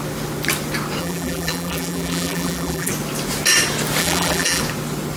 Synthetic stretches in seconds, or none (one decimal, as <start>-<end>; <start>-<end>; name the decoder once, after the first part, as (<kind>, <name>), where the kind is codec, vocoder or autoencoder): 1.0-2.9 (vocoder, BigVGAN v2); 4.0-4.6